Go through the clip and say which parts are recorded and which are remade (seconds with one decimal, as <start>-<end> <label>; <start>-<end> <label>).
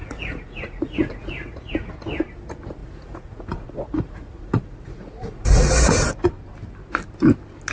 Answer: 0.0-1.9 remade; 1.9-2.8 recorded; 2.8-5.9 remade; 5.9-7.7 recorded